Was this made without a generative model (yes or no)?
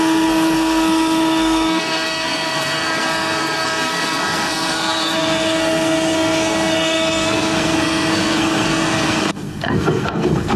no